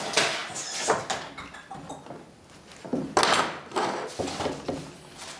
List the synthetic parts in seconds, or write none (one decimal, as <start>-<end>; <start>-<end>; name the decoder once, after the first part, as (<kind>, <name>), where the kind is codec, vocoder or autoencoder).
none